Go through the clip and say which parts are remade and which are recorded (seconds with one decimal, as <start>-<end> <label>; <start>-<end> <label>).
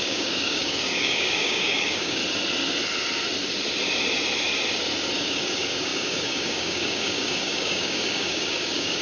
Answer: 0.0-2.2 remade; 2.2-5.2 recorded; 5.2-9.0 remade